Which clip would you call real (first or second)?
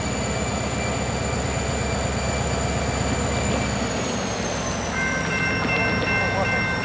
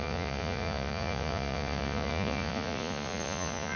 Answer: first